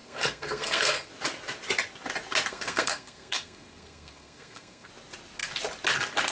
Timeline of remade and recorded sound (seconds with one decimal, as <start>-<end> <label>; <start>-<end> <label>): 0.0-1.1 remade; 1.1-2.5 recorded; 2.5-4.9 remade; 4.9-6.3 recorded